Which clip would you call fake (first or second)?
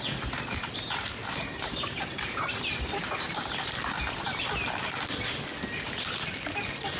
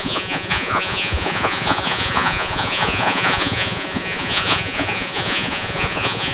second